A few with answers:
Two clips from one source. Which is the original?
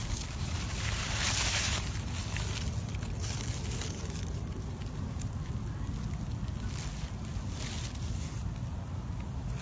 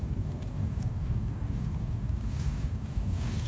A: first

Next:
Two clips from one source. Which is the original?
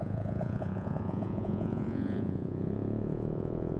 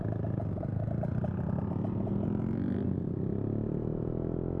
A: second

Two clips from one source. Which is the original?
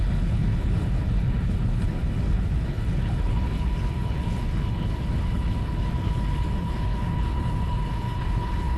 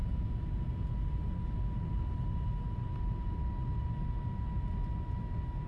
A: second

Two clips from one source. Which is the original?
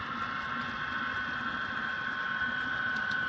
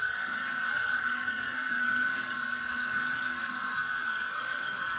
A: first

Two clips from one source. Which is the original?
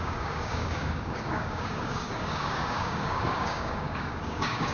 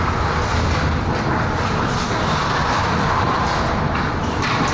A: second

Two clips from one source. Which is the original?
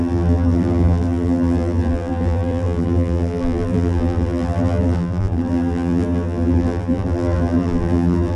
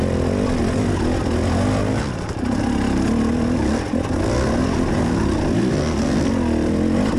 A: second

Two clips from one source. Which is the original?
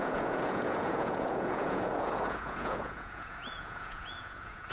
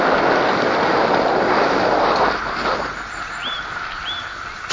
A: second